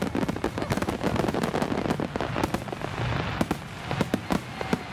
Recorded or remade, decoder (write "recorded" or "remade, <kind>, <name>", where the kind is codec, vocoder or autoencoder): recorded